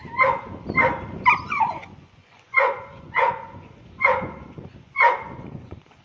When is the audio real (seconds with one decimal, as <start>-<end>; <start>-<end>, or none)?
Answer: 0.0-1.4